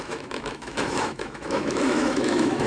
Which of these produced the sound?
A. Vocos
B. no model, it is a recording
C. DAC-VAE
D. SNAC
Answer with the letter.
C